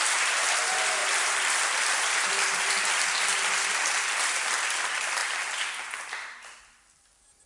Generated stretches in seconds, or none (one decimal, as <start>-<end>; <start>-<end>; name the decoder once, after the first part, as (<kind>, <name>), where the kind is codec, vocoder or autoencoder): none